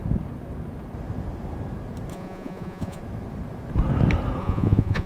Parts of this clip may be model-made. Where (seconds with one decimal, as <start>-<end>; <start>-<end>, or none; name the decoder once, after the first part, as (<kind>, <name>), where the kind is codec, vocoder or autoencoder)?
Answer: 2.1-3.0 (vocoder, Vocos); 4.4-5.1